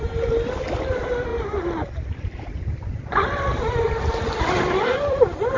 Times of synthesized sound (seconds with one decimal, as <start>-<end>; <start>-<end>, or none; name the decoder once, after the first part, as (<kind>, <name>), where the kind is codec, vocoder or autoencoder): none